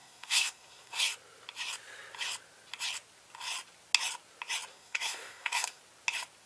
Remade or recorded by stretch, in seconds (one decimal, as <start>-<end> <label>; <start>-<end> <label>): 0.0-1.0 remade; 1.0-4.7 recorded; 4.7-5.8 remade; 5.8-6.5 recorded

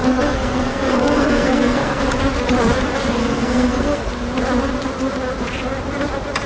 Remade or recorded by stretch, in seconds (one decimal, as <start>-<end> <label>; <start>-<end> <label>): 0.0-2.0 remade; 2.0-3.2 recorded; 3.2-4.1 remade; 4.1-6.5 recorded

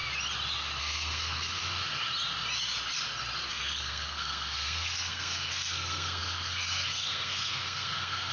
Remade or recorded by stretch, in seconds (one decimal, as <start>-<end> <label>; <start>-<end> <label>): 0.0-0.8 recorded; 0.8-1.6 remade; 1.6-3.5 recorded; 3.5-8.3 remade

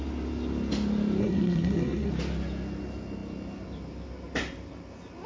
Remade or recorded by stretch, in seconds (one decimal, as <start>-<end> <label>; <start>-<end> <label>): 0.0-1.2 recorded; 1.2-2.1 remade; 2.1-5.3 recorded

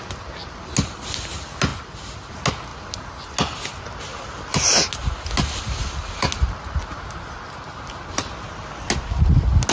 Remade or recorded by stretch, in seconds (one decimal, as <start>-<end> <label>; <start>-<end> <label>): 0.0-9.7 recorded

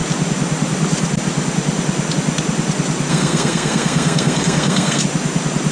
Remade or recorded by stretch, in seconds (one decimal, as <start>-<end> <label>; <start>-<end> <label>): 0.0-3.1 recorded; 3.1-5.0 remade; 5.0-5.7 recorded